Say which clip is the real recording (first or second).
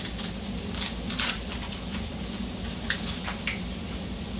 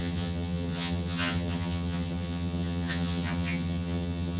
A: first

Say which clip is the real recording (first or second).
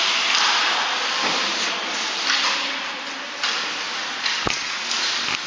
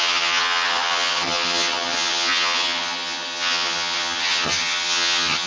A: first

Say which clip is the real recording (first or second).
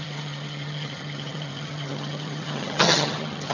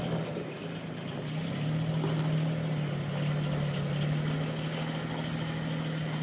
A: second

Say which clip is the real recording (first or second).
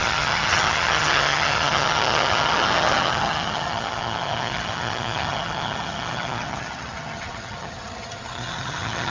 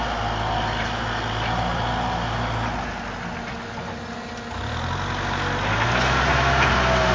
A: second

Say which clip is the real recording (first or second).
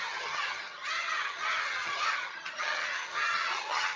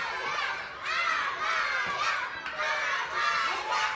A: second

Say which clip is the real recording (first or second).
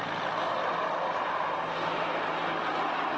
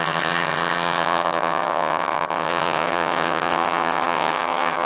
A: first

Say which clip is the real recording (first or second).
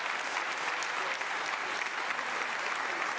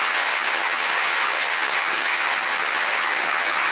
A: first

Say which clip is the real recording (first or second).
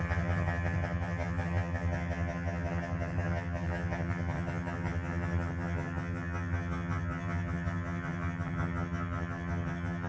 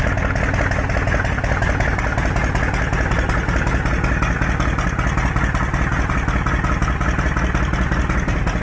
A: second